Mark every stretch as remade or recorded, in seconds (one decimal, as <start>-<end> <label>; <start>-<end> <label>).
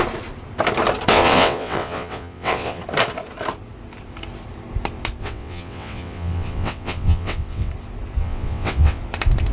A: 0.0-1.1 recorded; 1.1-2.8 remade; 2.8-5.2 recorded; 5.2-7.7 remade; 7.7-8.2 recorded; 8.2-9.0 remade; 9.0-9.5 recorded